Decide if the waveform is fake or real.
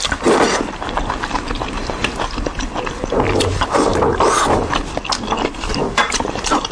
real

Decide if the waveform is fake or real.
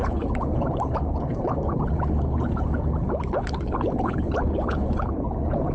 fake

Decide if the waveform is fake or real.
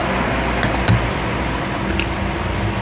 real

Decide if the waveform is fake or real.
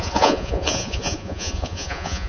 fake